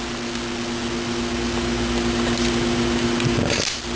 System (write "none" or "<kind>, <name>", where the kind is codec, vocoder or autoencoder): none